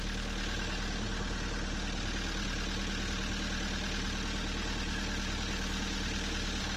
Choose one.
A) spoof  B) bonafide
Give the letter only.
B